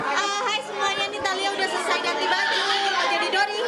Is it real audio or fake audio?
real